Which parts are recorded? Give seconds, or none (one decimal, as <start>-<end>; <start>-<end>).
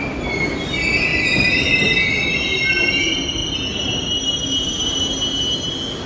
0.0-1.1; 1.8-6.1